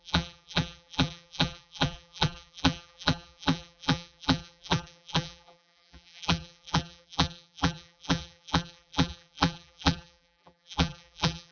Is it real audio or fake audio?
fake